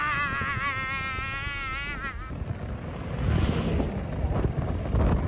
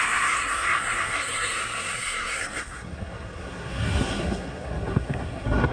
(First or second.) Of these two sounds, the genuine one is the first